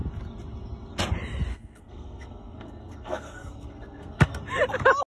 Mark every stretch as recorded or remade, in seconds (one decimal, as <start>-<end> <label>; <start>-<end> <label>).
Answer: 0.0-1.5 recorded; 1.5-4.4 remade; 4.4-5.1 recorded